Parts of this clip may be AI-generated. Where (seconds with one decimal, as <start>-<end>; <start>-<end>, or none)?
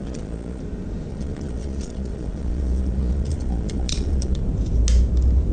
0.0-0.6; 1.1-4.4